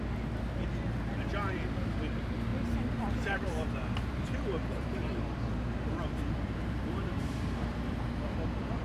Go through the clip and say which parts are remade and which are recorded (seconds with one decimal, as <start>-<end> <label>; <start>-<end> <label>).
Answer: 0.0-2.5 recorded; 2.5-7.4 remade; 7.4-8.8 recorded